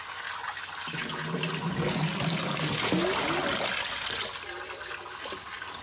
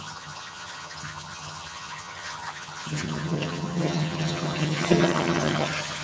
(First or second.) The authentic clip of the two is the first